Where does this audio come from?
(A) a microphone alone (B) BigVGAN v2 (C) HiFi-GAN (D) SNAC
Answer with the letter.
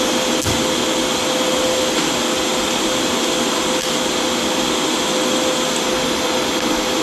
A